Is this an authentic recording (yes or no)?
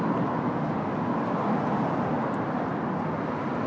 yes